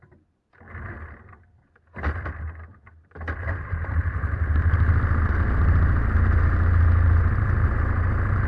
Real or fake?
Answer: real